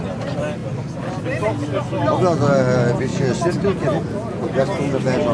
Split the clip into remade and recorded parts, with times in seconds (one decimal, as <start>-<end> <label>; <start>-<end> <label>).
0.0-3.1 recorded; 3.1-4.6 remade; 4.6-5.3 recorded